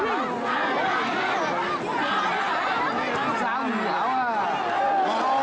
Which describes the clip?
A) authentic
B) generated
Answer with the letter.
A